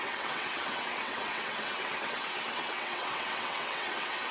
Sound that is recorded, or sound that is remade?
remade